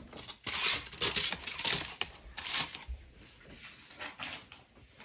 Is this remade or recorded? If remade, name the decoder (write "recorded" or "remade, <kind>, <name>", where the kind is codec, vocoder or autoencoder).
recorded